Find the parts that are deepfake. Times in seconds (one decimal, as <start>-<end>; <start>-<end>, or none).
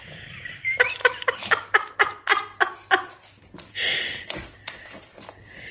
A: 0.0-1.0; 3.4-5.7